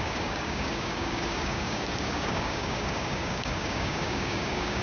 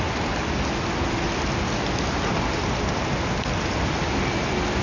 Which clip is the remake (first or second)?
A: first